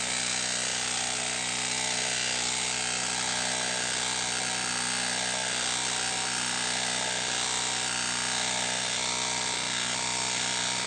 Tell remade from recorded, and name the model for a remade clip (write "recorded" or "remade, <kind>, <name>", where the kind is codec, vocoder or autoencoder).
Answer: recorded